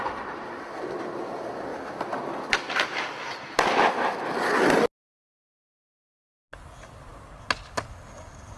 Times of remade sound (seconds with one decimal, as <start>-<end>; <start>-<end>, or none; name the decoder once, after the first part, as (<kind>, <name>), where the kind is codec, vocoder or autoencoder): 1.7-3.9 (vocoder, BigVGAN v2)